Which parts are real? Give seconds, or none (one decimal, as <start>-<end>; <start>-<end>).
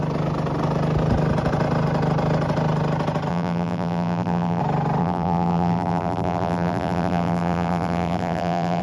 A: 0.0-3.3; 4.6-5.0